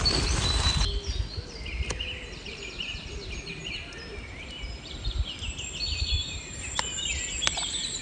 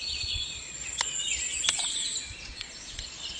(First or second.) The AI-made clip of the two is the second